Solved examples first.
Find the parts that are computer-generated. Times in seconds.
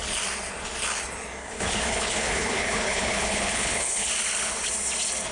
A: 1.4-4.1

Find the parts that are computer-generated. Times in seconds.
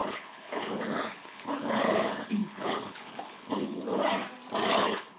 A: 0.0-4.0; 4.7-5.2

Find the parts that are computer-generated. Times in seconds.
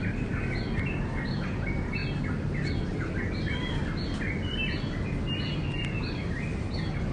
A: none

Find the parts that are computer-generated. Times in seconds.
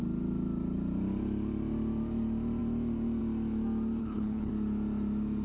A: 4.0-4.5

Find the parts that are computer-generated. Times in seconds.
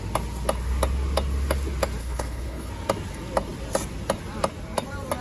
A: 2.0-2.7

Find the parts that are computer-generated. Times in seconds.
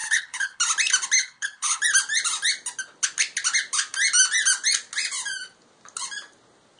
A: 0.0-0.6; 1.2-1.8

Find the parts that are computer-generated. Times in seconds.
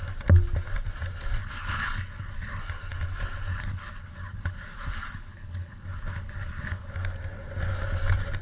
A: 1.4-2.6; 3.5-6.9